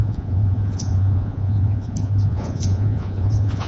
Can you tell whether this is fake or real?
fake